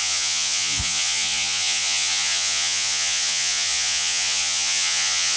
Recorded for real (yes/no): no